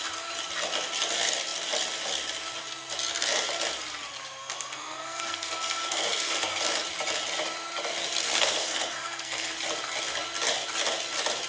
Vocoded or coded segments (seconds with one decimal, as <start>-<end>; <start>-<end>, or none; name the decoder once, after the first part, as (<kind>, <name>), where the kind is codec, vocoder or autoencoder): 4.4-6.6 (codec, SNAC); 8.2-9.5